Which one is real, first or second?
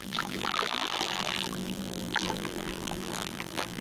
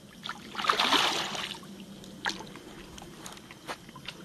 second